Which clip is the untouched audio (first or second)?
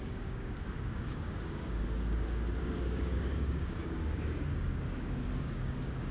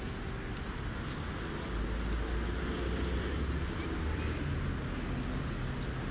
second